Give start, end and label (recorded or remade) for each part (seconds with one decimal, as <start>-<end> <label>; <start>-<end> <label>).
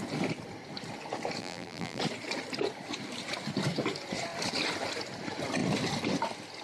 0.0-1.4 recorded; 1.4-2.0 remade; 2.0-6.6 recorded